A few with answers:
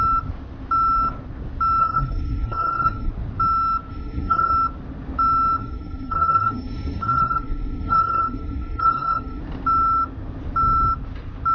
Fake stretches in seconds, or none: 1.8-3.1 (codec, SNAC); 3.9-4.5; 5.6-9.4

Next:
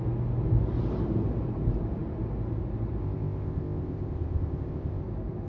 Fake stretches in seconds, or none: 3.0-5.0 (codec, ZipCodec)